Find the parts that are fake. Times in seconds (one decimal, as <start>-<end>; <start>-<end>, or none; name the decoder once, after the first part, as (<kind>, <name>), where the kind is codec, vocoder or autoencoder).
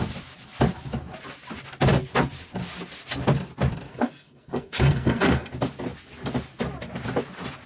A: 3.9-5.5 (codec, SNAC)